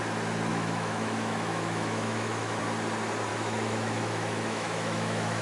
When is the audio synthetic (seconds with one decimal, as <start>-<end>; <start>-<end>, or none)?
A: 0.5-2.6; 3.3-5.4